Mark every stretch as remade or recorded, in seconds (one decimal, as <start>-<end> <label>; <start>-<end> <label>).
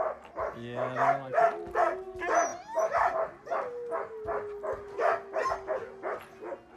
0.0-6.8 recorded